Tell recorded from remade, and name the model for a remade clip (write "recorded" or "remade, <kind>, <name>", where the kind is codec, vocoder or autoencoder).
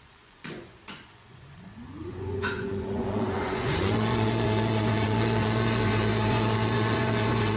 remade, vocoder, Vocos